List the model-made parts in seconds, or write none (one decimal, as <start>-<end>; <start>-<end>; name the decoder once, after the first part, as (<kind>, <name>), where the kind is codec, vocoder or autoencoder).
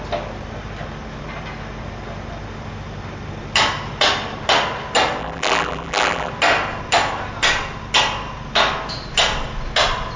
5.2-6.3 (vocoder, BigVGAN v2)